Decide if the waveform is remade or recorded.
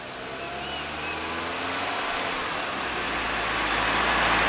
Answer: recorded